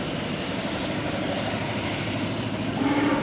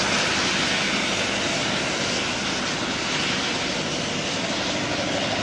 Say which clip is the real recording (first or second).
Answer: second